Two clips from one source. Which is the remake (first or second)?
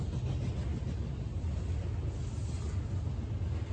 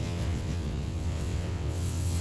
second